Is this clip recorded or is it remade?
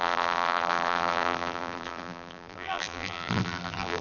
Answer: remade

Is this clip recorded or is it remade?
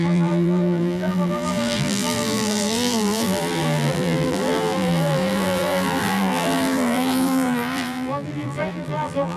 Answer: remade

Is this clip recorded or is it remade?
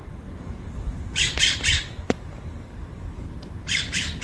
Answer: remade